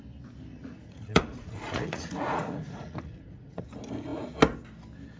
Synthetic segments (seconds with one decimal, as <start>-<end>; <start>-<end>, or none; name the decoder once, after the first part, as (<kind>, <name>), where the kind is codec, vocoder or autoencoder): 0.5-3.6 (vocoder, Vocos)